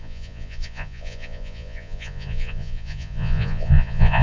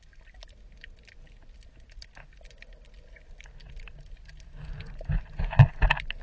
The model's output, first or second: first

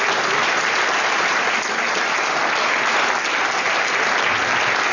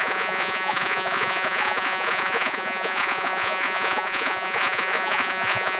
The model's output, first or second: second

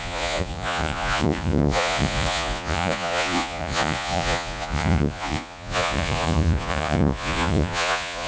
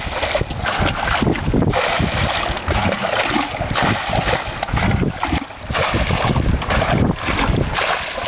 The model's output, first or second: first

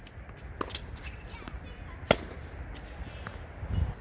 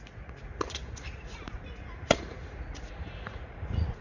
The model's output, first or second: second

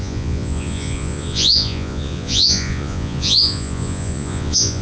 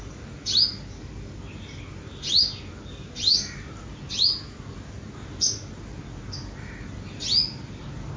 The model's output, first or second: first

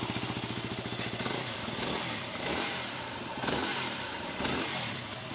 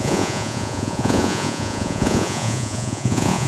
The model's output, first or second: second